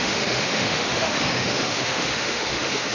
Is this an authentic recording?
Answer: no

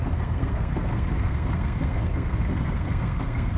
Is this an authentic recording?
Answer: no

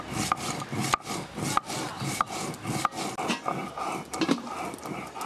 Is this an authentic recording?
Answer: yes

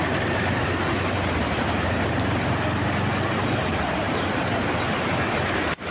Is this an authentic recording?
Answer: yes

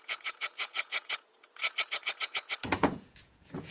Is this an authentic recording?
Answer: no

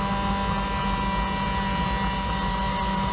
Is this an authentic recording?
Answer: yes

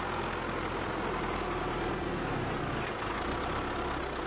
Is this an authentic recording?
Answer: yes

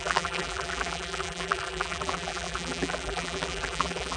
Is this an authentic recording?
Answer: no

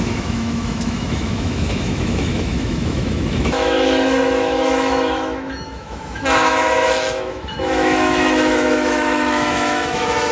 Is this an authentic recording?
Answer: no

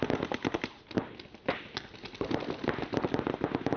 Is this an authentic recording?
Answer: yes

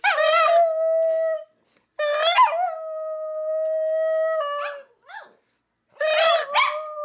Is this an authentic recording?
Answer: yes